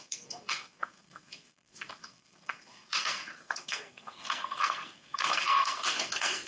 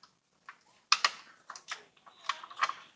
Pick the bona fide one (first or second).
second